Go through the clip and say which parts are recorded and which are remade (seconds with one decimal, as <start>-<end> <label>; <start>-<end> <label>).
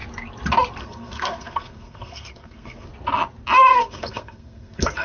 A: 0.0-0.8 recorded; 0.8-2.9 remade; 2.9-3.7 recorded; 3.7-5.0 remade